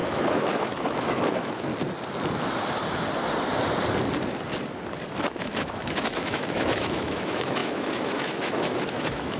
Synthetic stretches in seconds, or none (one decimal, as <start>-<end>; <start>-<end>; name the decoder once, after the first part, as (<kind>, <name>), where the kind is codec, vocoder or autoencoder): 0.0-1.7 (autoencoder, DAC-VAE); 5.2-9.4